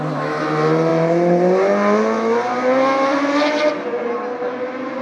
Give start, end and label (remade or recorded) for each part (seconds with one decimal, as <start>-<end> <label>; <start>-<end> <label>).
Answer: 0.0-5.0 recorded